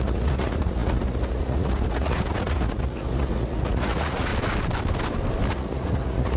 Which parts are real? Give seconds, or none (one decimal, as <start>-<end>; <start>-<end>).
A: 4.3-5.5